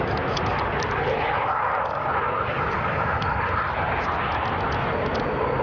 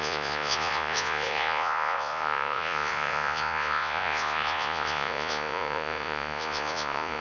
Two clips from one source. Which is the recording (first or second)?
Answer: first